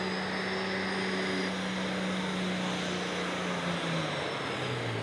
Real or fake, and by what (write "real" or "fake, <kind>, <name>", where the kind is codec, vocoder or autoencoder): real